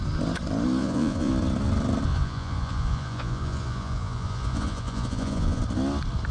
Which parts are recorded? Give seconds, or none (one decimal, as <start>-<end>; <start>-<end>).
0.0-0.8; 1.3-2.1; 5.6-6.3